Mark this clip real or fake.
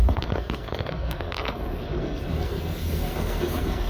fake